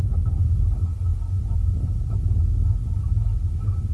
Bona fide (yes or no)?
yes